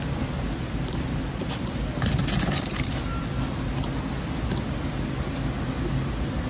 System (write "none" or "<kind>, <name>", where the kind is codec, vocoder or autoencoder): none